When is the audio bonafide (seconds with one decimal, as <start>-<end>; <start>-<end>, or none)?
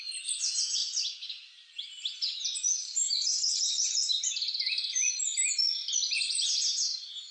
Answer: 0.0-7.3